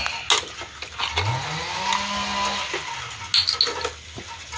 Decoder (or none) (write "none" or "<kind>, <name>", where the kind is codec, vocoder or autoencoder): none